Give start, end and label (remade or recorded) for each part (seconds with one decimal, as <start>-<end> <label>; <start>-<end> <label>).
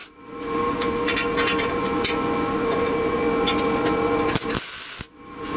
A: 0.0-5.6 recorded